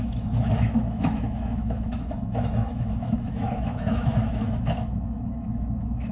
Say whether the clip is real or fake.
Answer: fake